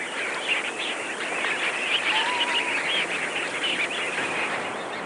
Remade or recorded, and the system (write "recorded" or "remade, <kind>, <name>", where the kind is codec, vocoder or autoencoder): recorded